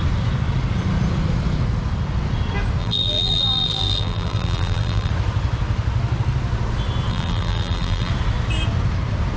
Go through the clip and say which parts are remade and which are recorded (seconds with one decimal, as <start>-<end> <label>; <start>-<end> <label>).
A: 0.0-2.8 recorded; 2.8-5.1 remade; 5.1-7.1 recorded; 7.1-8.1 remade; 8.1-9.4 recorded